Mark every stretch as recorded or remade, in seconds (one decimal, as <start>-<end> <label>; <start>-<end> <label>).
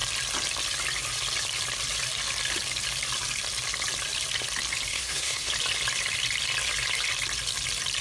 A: 0.0-4.9 recorded; 4.9-5.5 remade; 5.5-8.0 recorded